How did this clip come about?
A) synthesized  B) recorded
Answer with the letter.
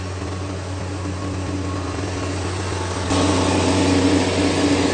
B